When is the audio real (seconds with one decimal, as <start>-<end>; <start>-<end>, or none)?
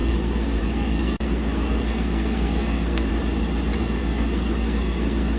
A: 3.1-3.8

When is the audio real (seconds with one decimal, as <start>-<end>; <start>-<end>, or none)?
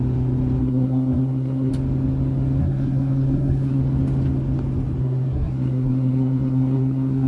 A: 0.0-0.6; 1.7-2.6; 3.8-5.0